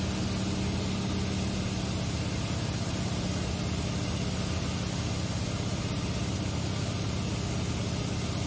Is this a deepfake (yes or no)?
no